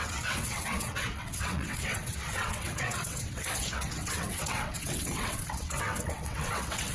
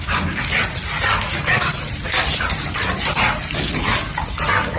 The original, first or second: second